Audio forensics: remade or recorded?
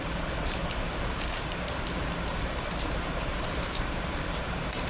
remade